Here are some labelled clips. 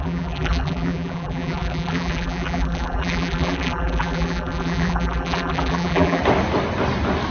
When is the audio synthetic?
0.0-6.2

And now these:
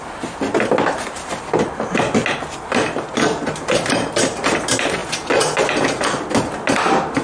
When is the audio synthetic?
none